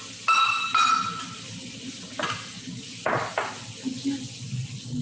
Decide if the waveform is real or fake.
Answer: real